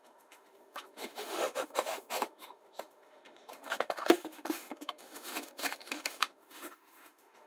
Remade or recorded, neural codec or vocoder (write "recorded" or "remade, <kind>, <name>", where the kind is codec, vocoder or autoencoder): remade, autoencoder, DAC-VAE